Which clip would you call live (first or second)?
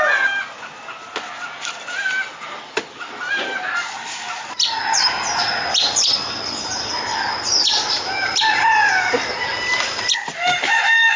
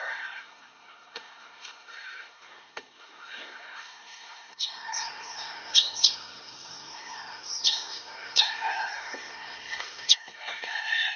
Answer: first